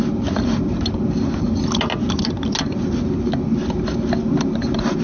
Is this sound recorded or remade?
recorded